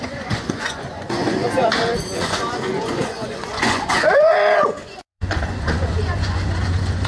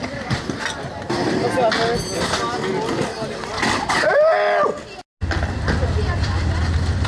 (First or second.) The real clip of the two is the second